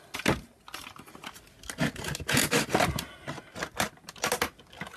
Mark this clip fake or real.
real